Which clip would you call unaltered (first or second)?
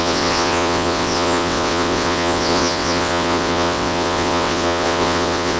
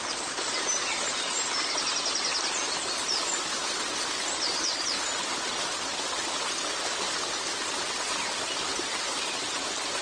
second